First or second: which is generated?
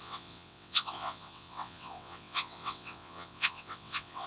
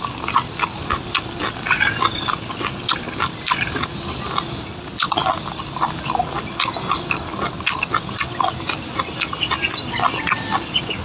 first